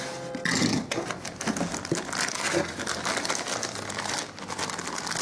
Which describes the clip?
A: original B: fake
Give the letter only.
A